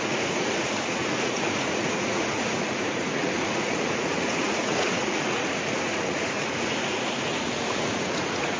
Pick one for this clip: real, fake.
fake